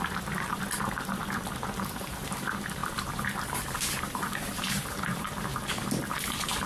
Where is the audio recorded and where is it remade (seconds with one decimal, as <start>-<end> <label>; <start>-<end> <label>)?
0.0-5.5 remade; 5.5-6.1 recorded; 6.1-6.7 remade